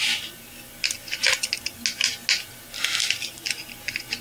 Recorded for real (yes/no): yes